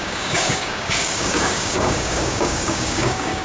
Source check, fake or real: fake